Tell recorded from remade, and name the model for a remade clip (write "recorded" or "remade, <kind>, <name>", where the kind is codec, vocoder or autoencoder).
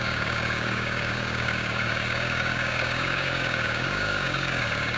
remade, codec, DAC